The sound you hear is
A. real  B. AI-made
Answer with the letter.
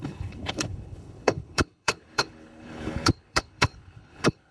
B